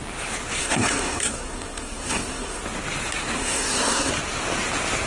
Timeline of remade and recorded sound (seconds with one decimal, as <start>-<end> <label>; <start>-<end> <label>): 0.0-0.6 recorded; 0.6-2.6 remade; 2.6-3.4 recorded; 3.4-4.1 remade; 4.1-5.1 recorded